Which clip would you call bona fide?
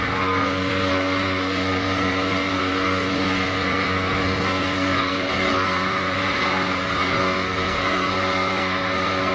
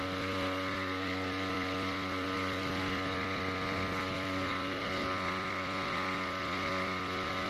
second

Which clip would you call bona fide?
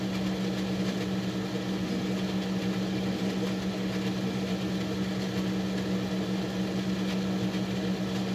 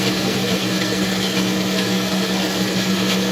first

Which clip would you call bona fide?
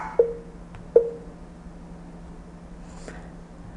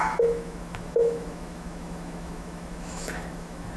first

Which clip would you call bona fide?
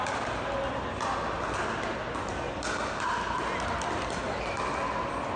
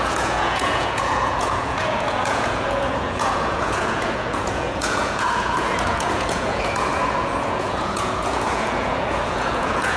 first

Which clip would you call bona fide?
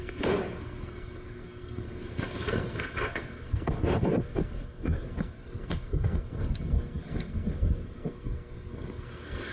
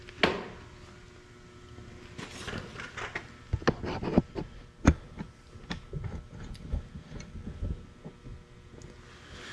second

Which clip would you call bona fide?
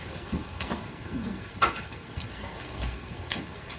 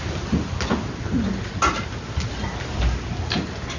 second